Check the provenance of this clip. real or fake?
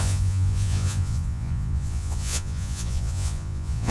fake